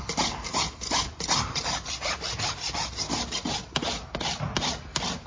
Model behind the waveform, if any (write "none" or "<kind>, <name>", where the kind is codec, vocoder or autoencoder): none